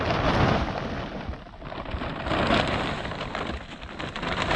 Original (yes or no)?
yes